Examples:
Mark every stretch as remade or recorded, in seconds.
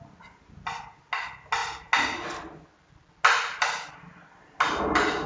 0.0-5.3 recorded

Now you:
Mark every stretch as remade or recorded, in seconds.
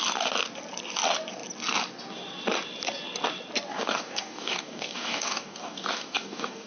0.0-3.7 recorded; 3.7-6.7 remade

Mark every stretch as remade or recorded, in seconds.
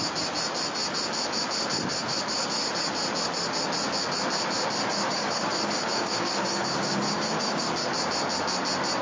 0.0-4.9 recorded; 4.9-7.7 remade; 7.7-9.0 recorded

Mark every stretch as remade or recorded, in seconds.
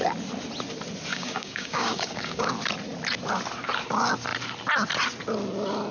0.0-1.1 recorded; 1.1-2.5 remade; 2.5-5.9 recorded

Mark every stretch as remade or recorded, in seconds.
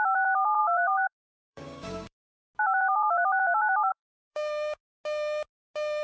0.0-0.6 recorded; 0.6-2.3 remade; 2.3-3.9 recorded; 3.9-4.9 remade; 4.9-6.0 recorded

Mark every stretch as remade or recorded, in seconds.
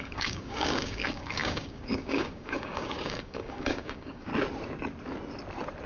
0.0-4.3 remade; 4.3-5.9 recorded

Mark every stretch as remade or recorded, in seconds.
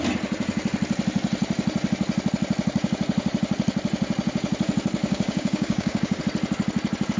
0.0-5.0 recorded; 5.0-6.2 remade; 6.2-7.2 recorded